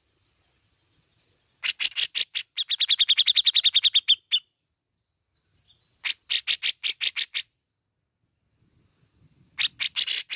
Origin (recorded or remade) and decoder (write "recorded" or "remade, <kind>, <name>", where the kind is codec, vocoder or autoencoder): recorded